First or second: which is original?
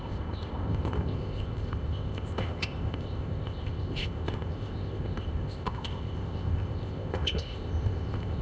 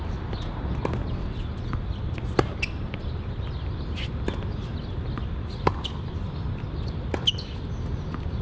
second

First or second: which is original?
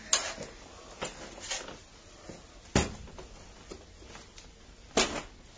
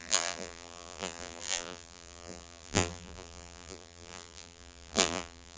first